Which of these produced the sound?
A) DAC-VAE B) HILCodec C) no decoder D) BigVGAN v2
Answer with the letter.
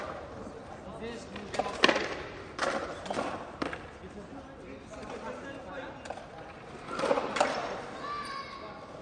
C